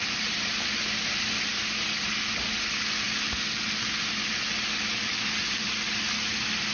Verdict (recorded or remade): recorded